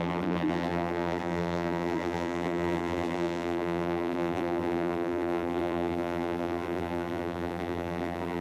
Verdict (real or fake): fake